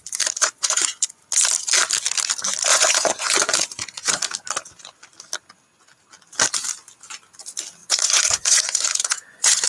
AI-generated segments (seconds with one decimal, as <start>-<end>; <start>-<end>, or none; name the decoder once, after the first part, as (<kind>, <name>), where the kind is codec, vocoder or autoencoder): 0.4-1.2 (vocoder, Vocos); 2.7-4.2; 7.8-9.7